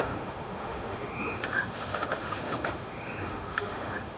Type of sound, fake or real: fake